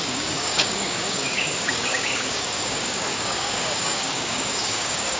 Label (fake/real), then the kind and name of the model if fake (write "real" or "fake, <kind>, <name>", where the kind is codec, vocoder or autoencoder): fake, codec, DAC